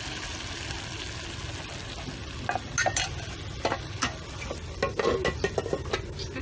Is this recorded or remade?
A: recorded